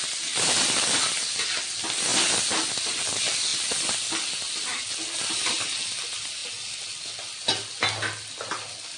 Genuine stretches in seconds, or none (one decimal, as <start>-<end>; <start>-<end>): 0.0-9.0